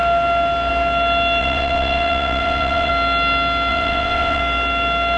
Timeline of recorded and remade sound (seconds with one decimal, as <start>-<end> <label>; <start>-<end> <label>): 0.0-1.4 recorded; 1.4-2.9 remade; 2.9-3.7 recorded; 3.7-4.4 remade; 4.4-5.2 recorded